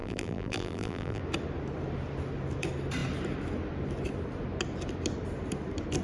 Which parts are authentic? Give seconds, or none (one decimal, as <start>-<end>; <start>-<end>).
1.2-6.0

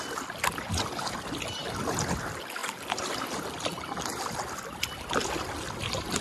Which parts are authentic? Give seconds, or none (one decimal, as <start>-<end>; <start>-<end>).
0.0-6.2

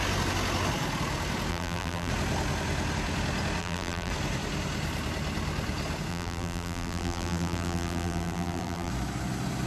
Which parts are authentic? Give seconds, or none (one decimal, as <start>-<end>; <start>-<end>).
0.0-1.5; 2.1-3.6; 4.1-6.1; 8.9-9.7

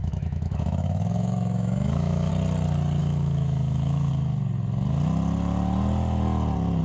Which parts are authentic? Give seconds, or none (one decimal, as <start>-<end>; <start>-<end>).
2.3-3.0; 4.1-6.8